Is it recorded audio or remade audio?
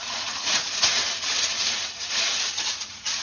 remade